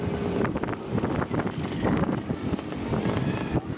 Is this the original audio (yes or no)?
yes